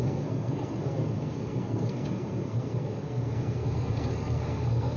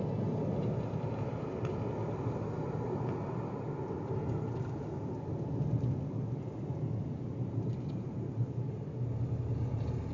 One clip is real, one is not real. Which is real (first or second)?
second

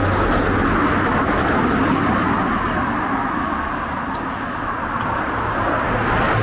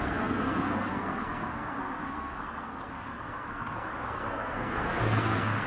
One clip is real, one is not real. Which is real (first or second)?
first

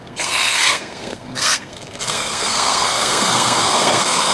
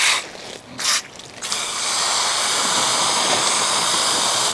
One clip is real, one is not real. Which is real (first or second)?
second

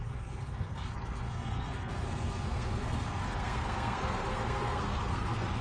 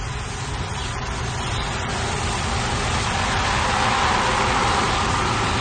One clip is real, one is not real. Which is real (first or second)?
second